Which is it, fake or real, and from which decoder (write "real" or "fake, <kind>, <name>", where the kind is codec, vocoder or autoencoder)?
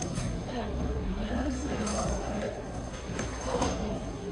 fake, codec, SNAC